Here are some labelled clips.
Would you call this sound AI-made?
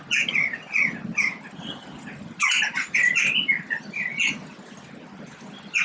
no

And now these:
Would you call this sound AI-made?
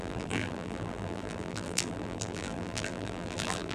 yes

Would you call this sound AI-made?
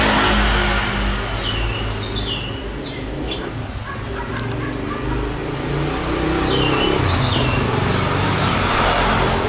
no